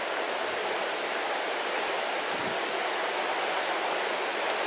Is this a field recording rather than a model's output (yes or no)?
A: yes